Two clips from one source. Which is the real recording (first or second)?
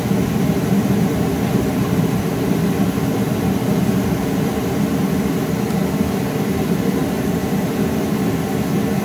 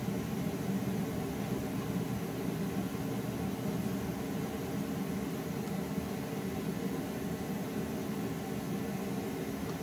second